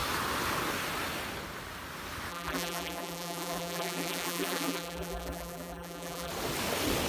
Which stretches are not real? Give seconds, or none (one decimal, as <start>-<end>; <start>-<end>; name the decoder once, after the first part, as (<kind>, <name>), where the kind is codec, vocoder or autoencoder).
2.3-6.3 (vocoder, BigVGAN v2)